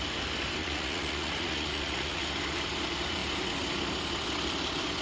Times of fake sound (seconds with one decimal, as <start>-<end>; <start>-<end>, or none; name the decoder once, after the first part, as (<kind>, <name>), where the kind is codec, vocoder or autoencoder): 0.6-2.2 (vocoder, Vocos)